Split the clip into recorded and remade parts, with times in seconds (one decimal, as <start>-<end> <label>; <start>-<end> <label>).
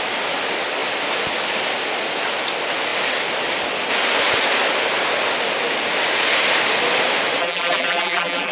0.0-7.4 recorded; 7.4-8.5 remade